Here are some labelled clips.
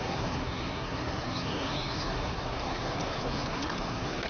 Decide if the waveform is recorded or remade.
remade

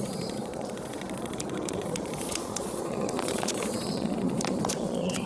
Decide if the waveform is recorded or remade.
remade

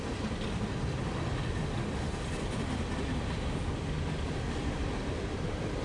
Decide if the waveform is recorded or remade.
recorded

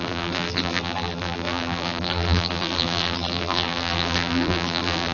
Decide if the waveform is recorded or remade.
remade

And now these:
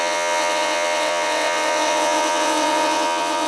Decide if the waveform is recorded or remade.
remade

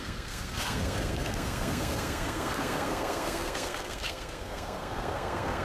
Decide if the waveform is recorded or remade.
remade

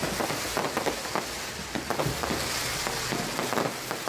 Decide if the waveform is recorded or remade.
recorded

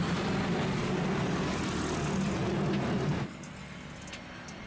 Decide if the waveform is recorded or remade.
recorded